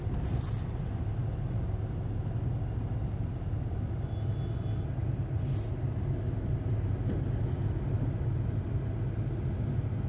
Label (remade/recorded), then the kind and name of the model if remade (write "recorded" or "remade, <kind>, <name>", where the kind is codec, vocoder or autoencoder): recorded